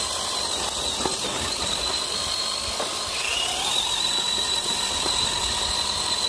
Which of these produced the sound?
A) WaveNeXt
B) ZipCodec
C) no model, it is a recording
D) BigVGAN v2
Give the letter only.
C